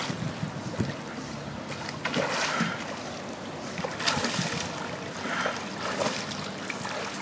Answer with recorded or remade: recorded